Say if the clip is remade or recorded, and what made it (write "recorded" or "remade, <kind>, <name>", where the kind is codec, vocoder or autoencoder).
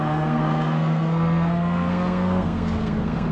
remade, codec, SNAC